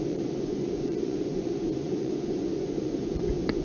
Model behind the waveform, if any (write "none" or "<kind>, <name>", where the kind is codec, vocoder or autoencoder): vocoder, Vocos